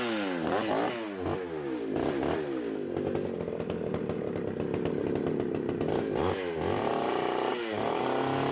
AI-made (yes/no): no